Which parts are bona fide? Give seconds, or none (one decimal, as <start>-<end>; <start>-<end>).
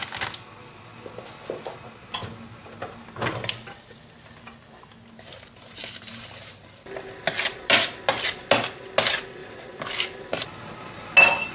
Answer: 0.0-11.5